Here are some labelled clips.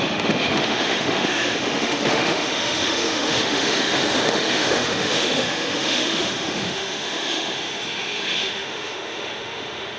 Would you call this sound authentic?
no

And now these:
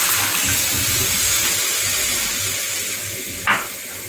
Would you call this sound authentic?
yes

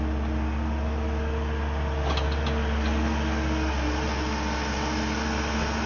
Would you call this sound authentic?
yes